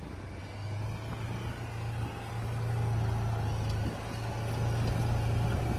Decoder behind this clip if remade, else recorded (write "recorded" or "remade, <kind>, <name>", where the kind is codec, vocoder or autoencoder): recorded